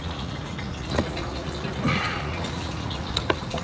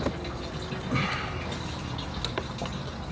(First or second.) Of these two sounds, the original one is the second